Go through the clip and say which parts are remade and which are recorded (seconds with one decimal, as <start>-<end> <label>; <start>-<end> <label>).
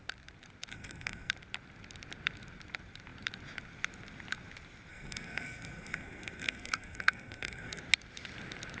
0.0-0.7 recorded; 0.7-1.3 remade; 1.3-4.9 recorded; 4.9-7.8 remade; 7.8-8.8 recorded